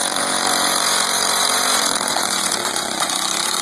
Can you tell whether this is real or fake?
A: fake